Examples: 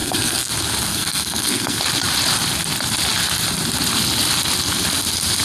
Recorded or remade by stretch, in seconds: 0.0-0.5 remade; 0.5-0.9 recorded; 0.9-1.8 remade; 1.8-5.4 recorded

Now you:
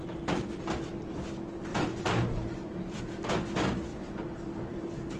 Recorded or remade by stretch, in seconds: 0.0-1.7 recorded; 1.7-3.0 remade; 3.0-3.9 recorded; 3.9-5.2 remade

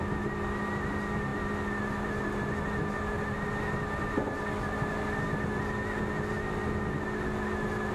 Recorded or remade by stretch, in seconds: 0.0-7.9 recorded

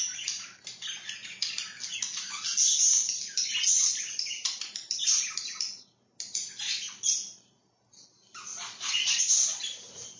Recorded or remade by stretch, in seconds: 0.0-8.5 recorded; 8.5-9.2 remade; 9.2-10.2 recorded

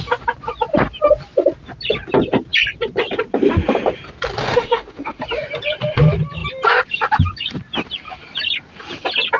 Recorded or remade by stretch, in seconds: 0.0-4.4 recorded; 4.4-5.2 remade; 5.2-9.4 recorded

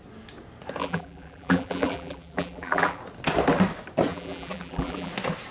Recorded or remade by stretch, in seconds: 0.0-0.8 recorded; 0.8-3.0 remade; 3.0-4.1 recorded; 4.1-5.1 remade; 5.1-5.5 recorded